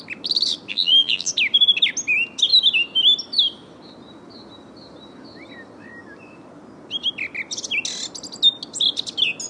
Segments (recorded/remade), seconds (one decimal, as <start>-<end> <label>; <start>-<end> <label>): 0.0-0.7 recorded; 0.7-1.3 remade; 1.3-9.5 recorded